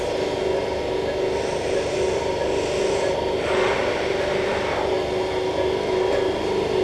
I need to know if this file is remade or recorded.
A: recorded